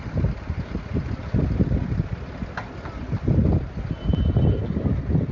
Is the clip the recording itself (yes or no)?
yes